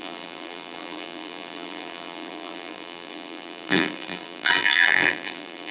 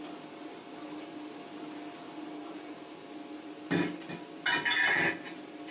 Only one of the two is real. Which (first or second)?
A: second